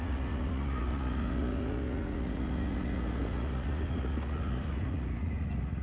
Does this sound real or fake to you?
fake